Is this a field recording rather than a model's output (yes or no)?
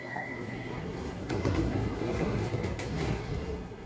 no